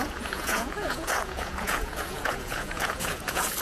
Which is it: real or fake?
fake